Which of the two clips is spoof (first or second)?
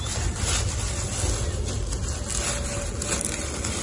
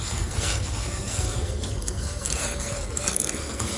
second